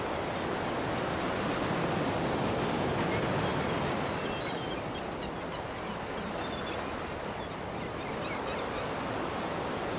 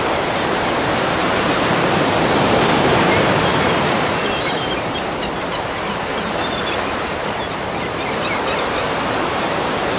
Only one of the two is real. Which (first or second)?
first